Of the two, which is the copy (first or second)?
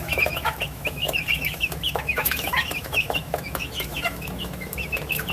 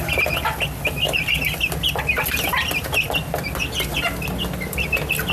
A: first